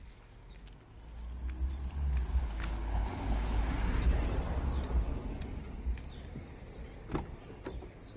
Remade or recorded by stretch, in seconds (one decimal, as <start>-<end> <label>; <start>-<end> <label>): 0.0-2.3 recorded; 2.3-3.7 remade; 3.7-8.2 recorded